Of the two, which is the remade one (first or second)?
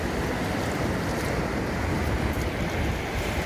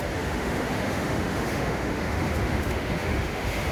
second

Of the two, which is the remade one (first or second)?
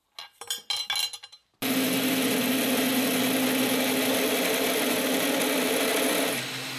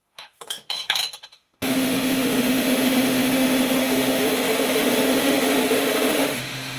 second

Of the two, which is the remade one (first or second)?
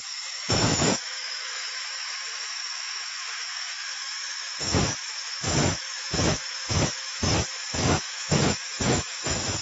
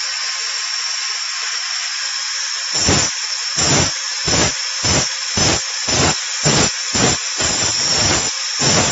first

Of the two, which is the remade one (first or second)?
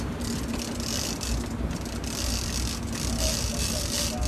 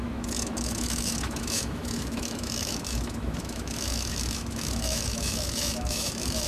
second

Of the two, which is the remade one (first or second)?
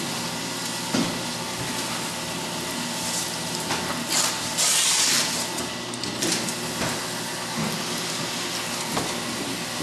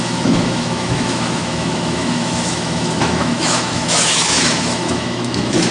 second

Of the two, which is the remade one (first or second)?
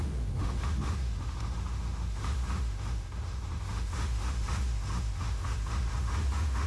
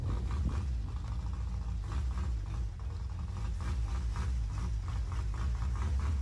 first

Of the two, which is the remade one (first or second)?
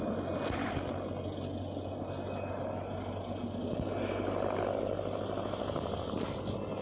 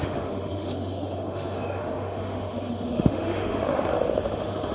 second